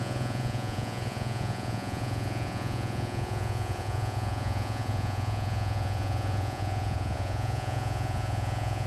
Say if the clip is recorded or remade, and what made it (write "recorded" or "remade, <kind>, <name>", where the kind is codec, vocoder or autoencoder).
remade, vocoder, Vocos